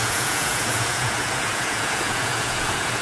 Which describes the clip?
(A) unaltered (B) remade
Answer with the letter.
B